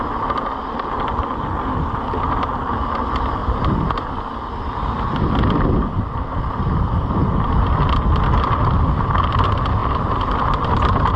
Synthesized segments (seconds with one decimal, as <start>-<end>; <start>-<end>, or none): 3.4-7.9; 9.8-10.6